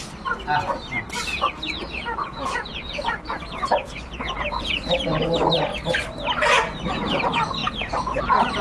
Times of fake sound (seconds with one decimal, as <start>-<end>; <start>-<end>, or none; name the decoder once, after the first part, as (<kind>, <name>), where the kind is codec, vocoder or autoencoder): 1.3-3.4 (vocoder, Vocos); 3.8-4.8; 7.6-8.2